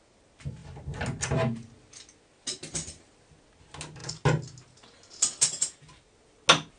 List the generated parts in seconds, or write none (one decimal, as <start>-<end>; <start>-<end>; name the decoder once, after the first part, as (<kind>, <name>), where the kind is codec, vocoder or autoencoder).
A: none